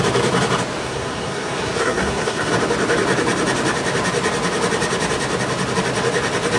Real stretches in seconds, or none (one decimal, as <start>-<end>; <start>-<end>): 0.0-0.8; 2.5-6.6